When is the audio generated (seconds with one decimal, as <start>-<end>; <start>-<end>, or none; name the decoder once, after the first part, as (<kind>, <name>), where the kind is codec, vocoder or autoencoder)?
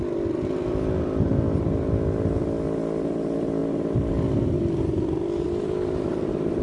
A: none